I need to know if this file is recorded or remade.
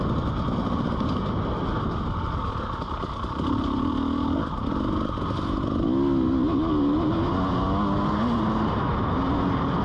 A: recorded